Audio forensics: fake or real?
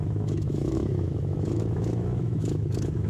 fake